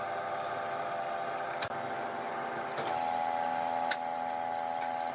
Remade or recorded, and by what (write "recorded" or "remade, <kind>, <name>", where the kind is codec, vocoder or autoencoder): recorded